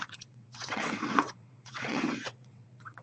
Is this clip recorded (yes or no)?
no